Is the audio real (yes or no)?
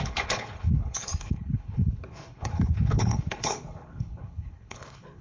no